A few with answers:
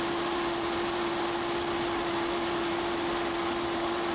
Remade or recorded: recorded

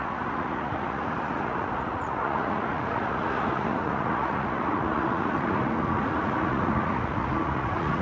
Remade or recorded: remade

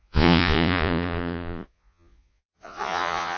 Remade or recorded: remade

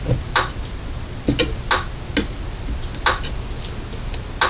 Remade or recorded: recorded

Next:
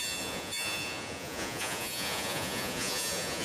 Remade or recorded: remade